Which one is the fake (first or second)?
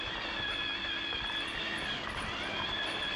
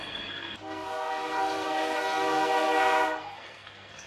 second